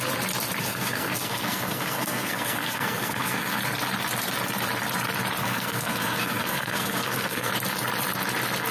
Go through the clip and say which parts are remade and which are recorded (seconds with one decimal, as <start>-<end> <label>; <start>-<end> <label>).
0.0-0.6 recorded; 0.6-3.6 remade; 3.6-5.4 recorded; 5.4-7.5 remade; 7.5-8.7 recorded